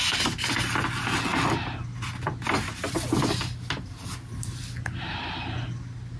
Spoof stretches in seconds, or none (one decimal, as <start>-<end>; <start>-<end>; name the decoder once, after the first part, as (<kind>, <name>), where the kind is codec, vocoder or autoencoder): none